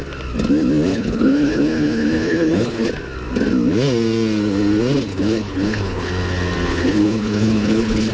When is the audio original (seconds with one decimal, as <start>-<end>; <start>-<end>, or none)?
0.0-0.9; 2.8-5.1; 6.1-6.7

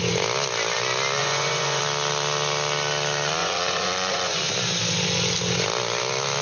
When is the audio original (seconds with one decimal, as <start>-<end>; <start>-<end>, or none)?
0.0-1.2; 1.8-3.4; 4.4-6.4

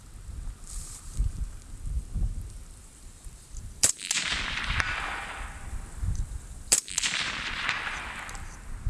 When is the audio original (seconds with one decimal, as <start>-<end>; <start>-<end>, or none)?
0.0-2.8; 7.6-8.9

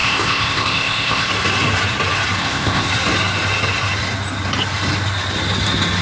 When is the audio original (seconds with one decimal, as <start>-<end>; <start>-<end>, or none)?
1.3-2.4; 2.9-6.0